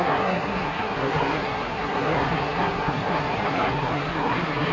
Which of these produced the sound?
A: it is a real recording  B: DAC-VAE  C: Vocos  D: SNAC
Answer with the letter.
D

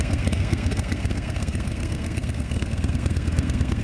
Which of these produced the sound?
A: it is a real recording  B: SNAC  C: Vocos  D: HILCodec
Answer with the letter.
B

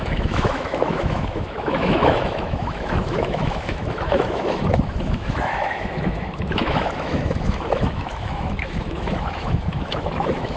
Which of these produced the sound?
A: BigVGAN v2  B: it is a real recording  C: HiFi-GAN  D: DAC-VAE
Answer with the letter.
D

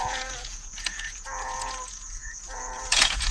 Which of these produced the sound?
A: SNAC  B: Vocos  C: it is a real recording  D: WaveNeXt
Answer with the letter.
B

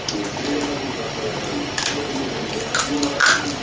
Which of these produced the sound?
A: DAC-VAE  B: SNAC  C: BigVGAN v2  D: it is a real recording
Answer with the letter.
D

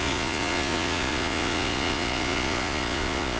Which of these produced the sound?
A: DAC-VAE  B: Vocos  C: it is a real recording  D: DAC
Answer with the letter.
B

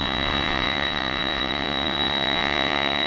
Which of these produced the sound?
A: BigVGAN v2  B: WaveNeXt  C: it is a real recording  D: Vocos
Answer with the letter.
B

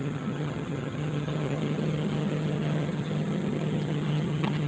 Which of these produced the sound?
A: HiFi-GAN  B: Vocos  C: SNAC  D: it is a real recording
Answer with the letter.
A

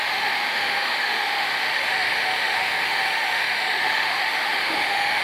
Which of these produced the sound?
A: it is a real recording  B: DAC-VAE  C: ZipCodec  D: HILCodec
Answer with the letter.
B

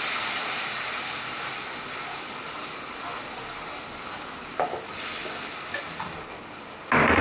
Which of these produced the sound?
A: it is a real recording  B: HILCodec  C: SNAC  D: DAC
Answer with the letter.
A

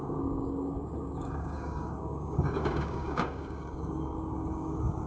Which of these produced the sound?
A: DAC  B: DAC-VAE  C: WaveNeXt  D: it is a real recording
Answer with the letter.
A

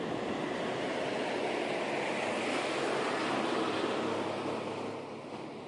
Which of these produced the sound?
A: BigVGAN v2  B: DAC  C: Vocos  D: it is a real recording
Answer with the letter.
D